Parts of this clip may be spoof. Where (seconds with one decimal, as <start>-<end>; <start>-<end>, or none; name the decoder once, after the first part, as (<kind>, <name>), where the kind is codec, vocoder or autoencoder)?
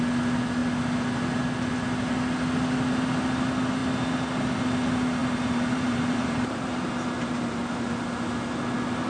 5.2-7.6 (vocoder, BigVGAN v2)